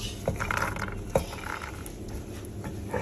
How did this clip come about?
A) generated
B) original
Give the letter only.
B